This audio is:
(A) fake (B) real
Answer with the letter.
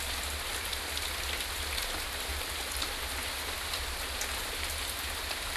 B